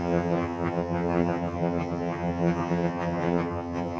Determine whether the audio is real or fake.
fake